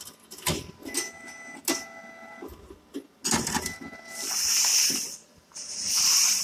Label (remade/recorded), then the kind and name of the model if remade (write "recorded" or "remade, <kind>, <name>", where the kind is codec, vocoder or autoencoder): recorded